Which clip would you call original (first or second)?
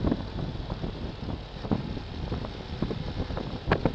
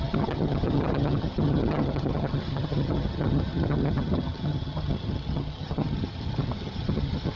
first